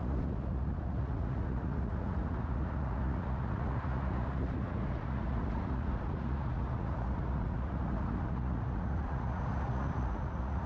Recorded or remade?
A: remade